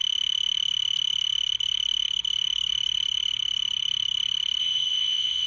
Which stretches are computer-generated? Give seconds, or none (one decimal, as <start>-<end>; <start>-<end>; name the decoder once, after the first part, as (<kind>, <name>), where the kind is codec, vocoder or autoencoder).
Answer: 4.6-5.5 (vocoder, WaveNeXt)